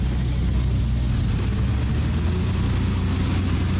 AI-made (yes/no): no